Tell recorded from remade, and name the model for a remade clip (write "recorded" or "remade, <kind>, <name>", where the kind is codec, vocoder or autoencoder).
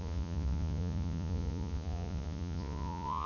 remade, vocoder, Vocos